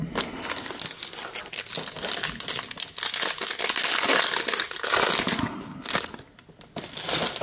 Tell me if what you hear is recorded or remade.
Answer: recorded